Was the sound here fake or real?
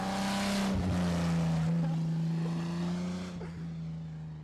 real